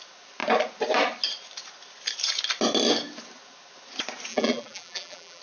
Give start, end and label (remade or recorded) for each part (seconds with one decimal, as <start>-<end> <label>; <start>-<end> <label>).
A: 0.0-4.3 recorded; 4.3-5.4 remade